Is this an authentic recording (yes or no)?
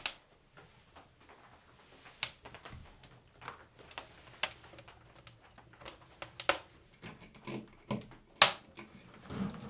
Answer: yes